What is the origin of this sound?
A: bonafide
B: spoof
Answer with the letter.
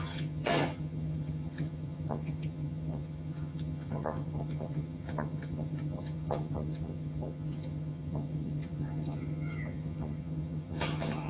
B